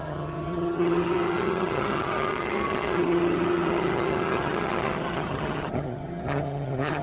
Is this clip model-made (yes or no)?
yes